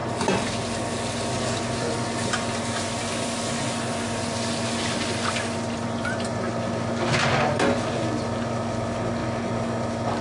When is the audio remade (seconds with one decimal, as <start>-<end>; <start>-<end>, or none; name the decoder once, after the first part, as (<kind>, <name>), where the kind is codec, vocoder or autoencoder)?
none